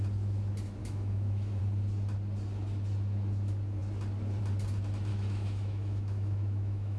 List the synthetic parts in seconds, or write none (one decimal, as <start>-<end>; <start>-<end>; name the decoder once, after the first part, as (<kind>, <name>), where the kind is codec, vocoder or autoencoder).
0.8-1.6 (autoencoder, DAC-VAE); 5.1-7.0